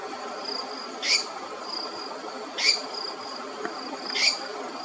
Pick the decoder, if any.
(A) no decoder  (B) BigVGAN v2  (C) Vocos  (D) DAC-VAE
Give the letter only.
A